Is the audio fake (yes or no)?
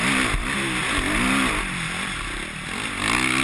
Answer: no